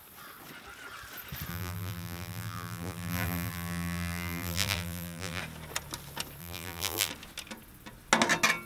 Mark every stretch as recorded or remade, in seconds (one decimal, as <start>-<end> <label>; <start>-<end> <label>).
0.0-1.5 recorded; 1.5-5.4 remade; 5.4-6.4 recorded; 6.4-7.1 remade; 7.1-8.7 recorded